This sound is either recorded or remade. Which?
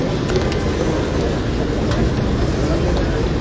recorded